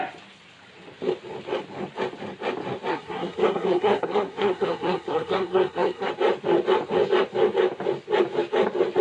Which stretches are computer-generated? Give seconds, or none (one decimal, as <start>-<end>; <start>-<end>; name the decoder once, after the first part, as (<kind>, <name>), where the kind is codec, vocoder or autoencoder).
2.9-6.1 (codec, SNAC)